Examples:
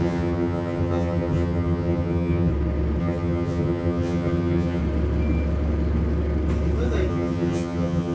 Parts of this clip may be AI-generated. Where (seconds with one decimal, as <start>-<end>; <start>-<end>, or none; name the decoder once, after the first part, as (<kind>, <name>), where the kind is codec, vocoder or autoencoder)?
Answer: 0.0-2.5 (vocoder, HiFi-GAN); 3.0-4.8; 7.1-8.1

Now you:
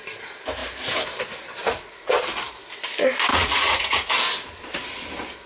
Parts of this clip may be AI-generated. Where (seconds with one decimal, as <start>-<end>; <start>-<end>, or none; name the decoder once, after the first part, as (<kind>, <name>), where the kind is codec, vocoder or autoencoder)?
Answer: 1.6-2.1 (vocoder, Vocos); 3.3-4.1

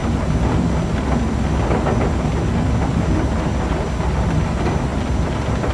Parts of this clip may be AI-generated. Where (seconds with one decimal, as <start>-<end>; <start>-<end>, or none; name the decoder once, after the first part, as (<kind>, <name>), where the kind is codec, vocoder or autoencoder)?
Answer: none

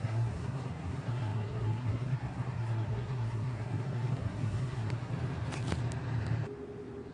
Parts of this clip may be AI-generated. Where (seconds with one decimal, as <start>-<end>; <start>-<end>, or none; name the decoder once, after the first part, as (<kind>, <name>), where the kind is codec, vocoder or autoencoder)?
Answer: 0.0-5.1 (codec, SNAC)